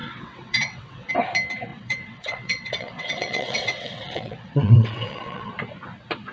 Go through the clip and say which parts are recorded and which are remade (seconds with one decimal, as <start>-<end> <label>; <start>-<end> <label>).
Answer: 0.0-1.1 remade; 1.1-1.7 recorded; 1.7-5.5 remade; 5.5-6.3 recorded